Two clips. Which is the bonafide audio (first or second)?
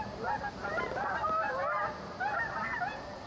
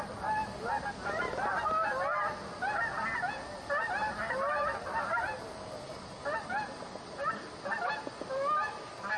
second